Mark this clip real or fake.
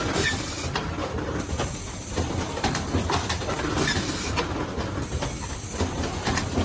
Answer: real